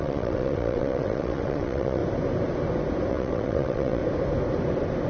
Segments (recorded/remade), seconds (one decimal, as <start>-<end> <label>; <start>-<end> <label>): 0.0-2.0 remade; 2.0-3.1 recorded; 3.1-4.0 remade; 4.0-5.1 recorded